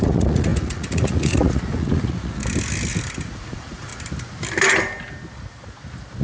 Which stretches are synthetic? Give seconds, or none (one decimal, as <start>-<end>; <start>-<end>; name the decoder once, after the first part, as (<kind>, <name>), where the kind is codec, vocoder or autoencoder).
0.0-2.4 (vocoder, Vocos); 3.4-3.9

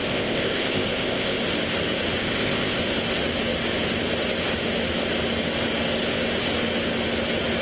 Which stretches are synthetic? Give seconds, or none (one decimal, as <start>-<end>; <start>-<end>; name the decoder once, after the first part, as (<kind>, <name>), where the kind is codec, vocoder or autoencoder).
0.0-1.4 (codec, ZipCodec); 2.2-2.8

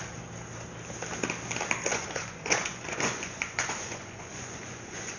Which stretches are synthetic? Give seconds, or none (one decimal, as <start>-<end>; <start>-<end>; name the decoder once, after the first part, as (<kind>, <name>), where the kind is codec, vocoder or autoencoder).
1.9-5.2 (vocoder, Vocos)